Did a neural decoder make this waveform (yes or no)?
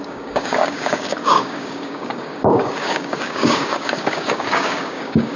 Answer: yes